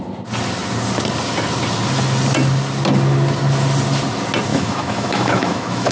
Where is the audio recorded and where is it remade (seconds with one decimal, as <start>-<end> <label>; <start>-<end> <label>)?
0.0-4.5 recorded; 4.5-5.9 remade